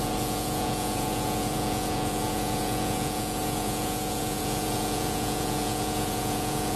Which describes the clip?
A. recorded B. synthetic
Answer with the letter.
B